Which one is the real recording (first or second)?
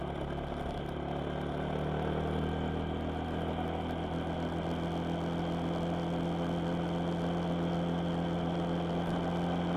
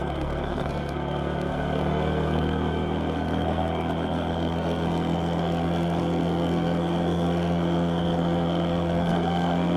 first